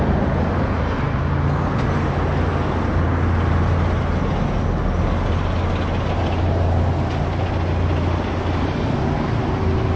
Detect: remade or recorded recorded